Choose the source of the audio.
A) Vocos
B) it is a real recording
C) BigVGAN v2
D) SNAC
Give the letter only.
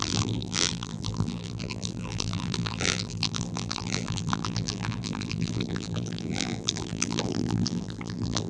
C